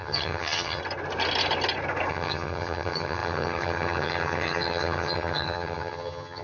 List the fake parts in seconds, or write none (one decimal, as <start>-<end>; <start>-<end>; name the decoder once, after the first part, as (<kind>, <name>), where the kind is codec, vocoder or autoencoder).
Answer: 0.0-0.8 (vocoder, HiFi-GAN); 2.1-6.4